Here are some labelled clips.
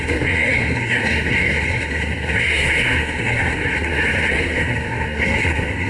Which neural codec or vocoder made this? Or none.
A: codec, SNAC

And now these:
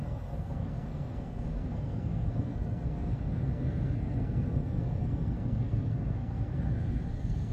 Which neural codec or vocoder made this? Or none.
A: codec, SNAC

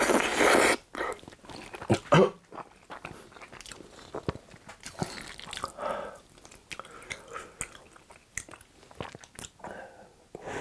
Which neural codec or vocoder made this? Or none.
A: none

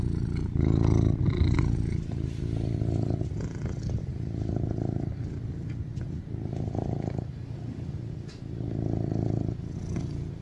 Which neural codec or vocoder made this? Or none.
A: none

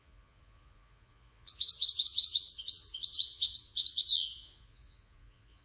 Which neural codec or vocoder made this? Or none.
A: vocoder, Vocos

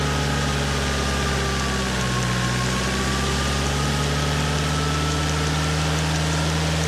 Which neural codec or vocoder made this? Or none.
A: none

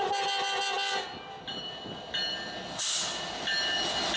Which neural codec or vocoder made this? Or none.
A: none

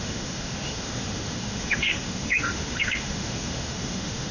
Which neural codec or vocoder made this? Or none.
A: autoencoder, DAC-VAE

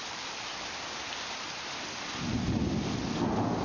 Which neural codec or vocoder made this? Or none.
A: none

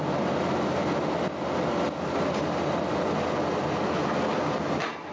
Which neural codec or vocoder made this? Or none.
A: none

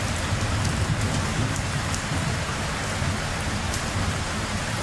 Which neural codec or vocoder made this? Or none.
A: vocoder, BigVGAN v2